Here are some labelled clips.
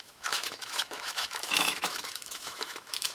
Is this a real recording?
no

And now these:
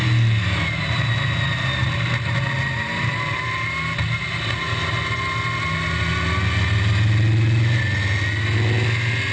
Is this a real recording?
yes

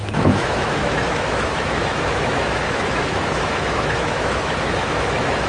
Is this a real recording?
no